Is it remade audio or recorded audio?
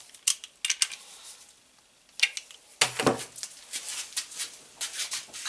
recorded